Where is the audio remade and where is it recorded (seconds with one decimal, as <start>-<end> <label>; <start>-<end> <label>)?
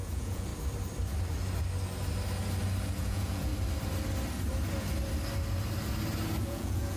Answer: 0.0-0.5 remade; 0.5-3.0 recorded; 3.0-3.5 remade; 3.5-6.4 recorded; 6.4-7.0 remade